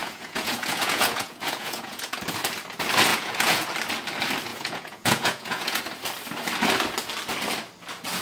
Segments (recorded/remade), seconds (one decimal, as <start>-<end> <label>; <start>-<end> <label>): 0.0-2.2 remade; 2.2-3.1 recorded; 3.1-3.7 remade; 3.7-4.5 recorded; 4.5-5.8 remade; 5.8-8.2 recorded